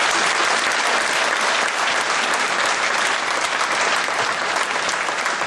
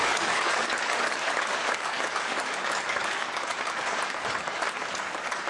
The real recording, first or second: first